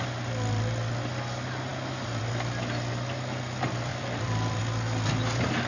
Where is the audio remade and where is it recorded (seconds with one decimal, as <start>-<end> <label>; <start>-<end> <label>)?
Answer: 0.0-3.9 recorded; 3.9-4.6 remade; 4.6-5.7 recorded